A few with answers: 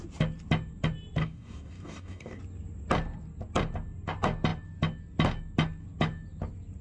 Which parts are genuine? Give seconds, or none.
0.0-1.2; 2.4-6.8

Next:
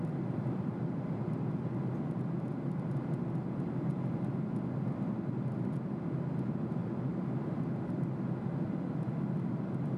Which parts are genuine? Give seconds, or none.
1.8-6.8; 7.9-10.0

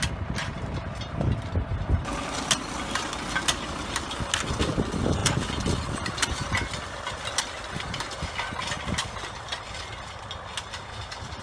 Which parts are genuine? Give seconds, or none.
0.0-11.4

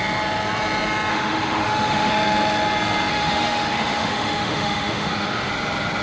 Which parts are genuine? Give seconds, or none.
0.0-1.1; 2.1-3.1; 5.5-6.0